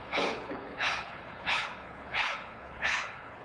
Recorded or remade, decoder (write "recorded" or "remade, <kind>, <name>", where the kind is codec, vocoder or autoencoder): remade, codec, HILCodec